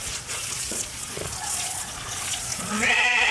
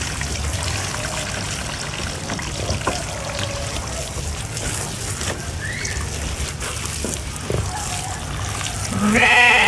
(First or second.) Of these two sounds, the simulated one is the first